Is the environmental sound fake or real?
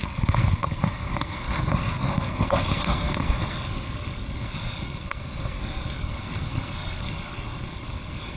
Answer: fake